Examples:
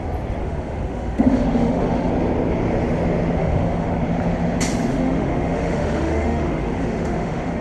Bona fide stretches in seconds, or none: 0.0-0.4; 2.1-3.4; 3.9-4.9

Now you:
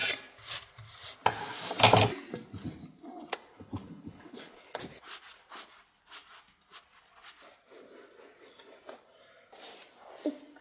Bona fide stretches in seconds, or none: 0.0-3.5; 4.8-10.6

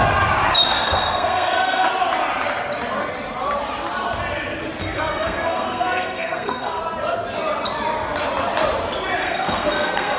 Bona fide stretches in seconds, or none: 0.0-0.7; 1.9-4.8; 6.8-9.2